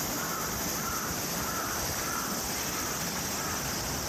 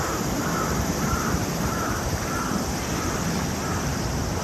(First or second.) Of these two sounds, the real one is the first